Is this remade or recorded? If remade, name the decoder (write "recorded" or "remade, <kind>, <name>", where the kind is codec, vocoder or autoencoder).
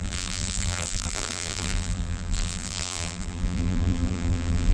remade, vocoder, BigVGAN v2